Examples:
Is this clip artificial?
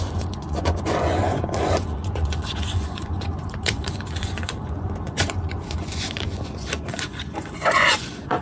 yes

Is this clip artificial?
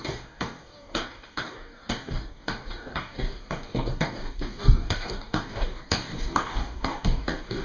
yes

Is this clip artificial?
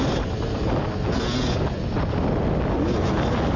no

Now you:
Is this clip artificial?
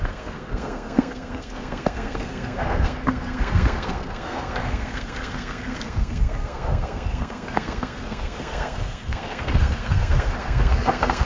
yes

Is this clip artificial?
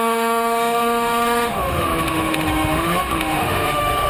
yes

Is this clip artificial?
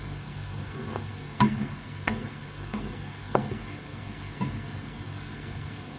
yes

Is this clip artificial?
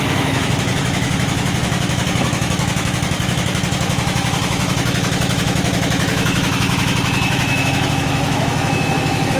yes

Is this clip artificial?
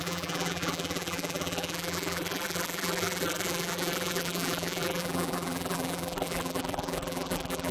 yes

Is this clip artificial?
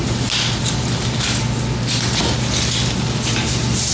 no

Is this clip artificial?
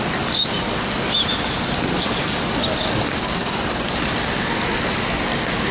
no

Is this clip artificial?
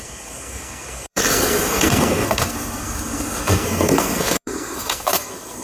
yes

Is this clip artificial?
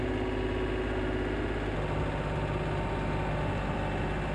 no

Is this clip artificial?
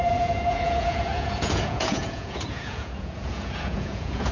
yes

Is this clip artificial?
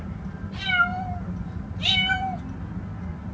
no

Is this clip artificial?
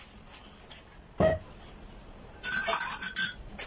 no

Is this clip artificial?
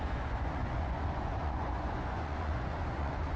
yes